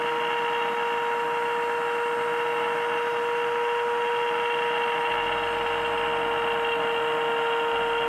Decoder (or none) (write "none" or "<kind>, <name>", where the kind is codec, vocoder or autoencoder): none